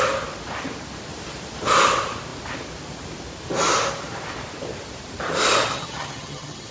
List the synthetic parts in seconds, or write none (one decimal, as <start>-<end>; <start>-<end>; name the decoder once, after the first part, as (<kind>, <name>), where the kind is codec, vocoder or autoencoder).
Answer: 5.7-6.7 (vocoder, HiFi-GAN)